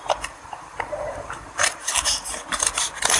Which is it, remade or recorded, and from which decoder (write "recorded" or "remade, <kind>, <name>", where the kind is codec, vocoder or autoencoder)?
remade, vocoder, BigVGAN v2